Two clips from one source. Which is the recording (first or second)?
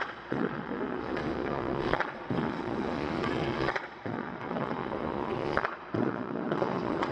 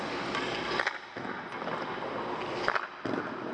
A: second